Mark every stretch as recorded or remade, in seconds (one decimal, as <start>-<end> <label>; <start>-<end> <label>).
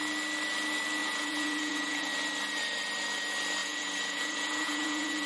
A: 0.0-1.0 recorded; 1.0-2.1 remade; 2.1-3.6 recorded; 3.6-5.3 remade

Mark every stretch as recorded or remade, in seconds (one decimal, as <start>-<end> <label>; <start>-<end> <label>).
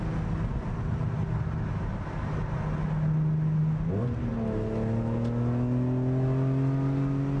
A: 0.0-7.4 recorded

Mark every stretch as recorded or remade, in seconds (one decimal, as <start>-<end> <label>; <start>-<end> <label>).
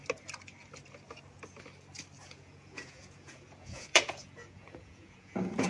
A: 0.0-2.2 recorded; 2.2-5.7 remade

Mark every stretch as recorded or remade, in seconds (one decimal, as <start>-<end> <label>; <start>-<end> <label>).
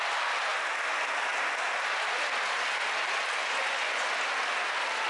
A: 0.0-3.4 recorded; 3.4-4.0 remade; 4.0-5.1 recorded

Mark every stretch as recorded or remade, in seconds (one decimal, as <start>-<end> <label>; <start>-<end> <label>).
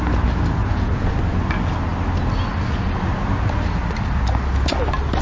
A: 0.0-0.6 recorded; 0.6-1.1 remade; 1.1-5.2 recorded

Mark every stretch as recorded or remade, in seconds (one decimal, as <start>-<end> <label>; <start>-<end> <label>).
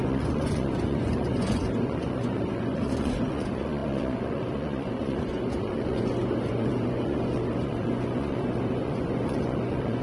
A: 0.0-10.0 remade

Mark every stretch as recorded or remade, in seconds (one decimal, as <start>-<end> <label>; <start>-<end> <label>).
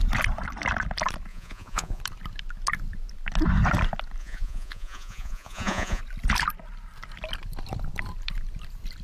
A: 0.0-1.3 recorded; 1.3-2.0 remade; 2.0-4.2 recorded; 4.2-6.0 remade; 6.0-9.0 recorded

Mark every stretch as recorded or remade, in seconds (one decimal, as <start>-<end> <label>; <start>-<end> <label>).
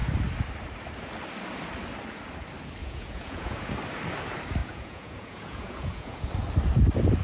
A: 0.0-2.8 recorded; 2.8-3.7 remade; 3.7-4.6 recorded; 4.6-6.3 remade; 6.3-7.2 recorded